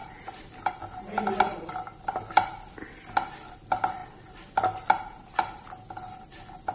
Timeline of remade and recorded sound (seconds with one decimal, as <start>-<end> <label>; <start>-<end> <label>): 0.0-1.5 recorded; 1.5-2.2 remade; 2.2-6.7 recorded